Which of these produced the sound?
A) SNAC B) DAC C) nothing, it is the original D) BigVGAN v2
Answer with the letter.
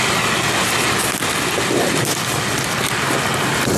C